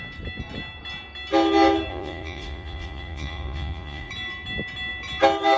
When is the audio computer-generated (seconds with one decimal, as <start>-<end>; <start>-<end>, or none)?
1.9-4.1